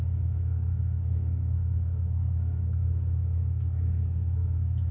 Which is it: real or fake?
fake